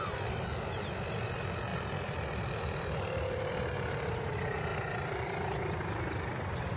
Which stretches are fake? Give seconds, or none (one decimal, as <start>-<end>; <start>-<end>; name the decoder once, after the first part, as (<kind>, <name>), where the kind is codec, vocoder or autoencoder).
1.7-3.5 (vocoder, BigVGAN v2); 4.7-6.1